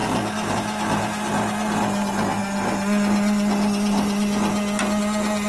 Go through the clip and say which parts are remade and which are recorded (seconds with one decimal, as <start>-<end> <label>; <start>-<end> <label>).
0.0-5.5 recorded

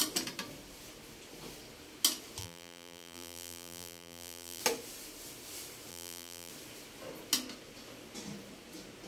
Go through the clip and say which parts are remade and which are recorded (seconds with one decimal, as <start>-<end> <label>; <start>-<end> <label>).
0.0-2.4 recorded; 2.4-4.6 remade; 4.6-5.9 recorded; 5.9-6.5 remade; 6.5-9.1 recorded

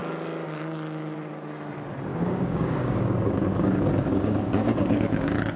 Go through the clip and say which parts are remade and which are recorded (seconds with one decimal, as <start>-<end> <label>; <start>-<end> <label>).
0.0-2.1 recorded; 2.1-5.6 remade

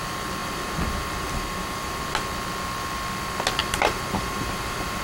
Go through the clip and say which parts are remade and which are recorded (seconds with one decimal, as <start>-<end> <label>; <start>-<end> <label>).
0.0-0.4 recorded; 0.4-2.0 remade; 2.0-3.6 recorded; 3.6-5.0 remade